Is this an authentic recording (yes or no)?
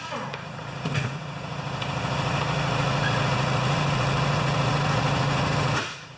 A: no